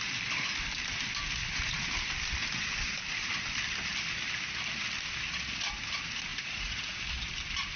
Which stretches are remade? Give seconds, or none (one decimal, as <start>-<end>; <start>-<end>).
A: 6.3-6.9